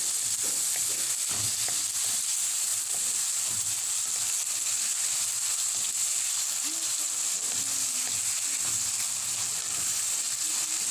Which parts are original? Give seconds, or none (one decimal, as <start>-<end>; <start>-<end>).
0.0-2.7; 4.0-10.9